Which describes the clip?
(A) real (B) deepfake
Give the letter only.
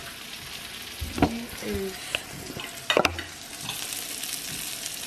A